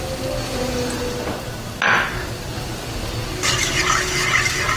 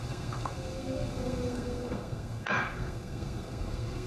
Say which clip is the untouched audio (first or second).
first